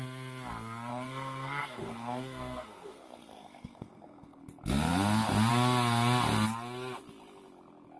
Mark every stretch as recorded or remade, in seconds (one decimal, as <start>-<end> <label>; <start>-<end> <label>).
0.0-0.9 recorded; 0.9-4.4 remade; 4.4-8.0 recorded